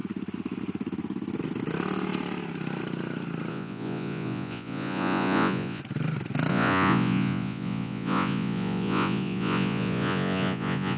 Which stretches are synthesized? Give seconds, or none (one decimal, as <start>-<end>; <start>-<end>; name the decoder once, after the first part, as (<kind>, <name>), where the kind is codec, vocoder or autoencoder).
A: 3.5-5.8 (vocoder, Vocos); 6.5-11.0